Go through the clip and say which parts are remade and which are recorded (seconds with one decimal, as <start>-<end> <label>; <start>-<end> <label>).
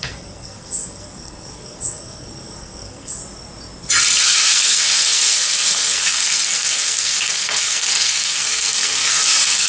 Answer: 0.0-3.2 remade; 3.2-4.2 recorded; 4.2-9.7 remade